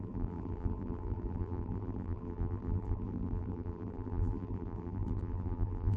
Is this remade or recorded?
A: remade